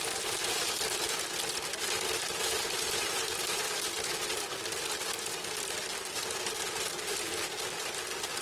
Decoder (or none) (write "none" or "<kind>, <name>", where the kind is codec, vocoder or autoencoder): none